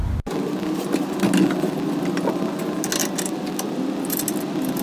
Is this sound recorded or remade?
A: recorded